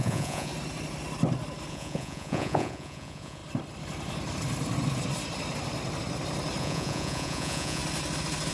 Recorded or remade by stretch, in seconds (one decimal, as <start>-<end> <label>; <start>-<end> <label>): 0.0-0.5 remade; 0.5-1.7 recorded; 1.7-3.4 remade; 3.4-6.6 recorded; 6.6-7.8 remade; 7.8-8.5 recorded